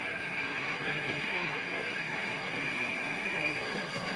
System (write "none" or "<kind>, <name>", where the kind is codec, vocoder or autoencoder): codec, SNAC